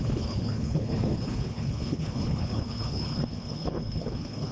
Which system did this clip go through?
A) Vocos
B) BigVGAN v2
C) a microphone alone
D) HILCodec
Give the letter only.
D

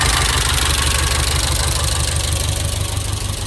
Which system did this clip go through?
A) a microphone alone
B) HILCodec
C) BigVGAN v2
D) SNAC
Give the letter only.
A